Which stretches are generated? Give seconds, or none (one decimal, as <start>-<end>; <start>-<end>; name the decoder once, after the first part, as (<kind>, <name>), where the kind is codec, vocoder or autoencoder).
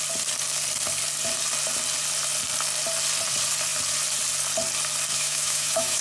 5.1-6.0 (autoencoder, DAC-VAE)